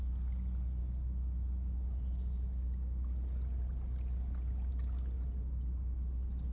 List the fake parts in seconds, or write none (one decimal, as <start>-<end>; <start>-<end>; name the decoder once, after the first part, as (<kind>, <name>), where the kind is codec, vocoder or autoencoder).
none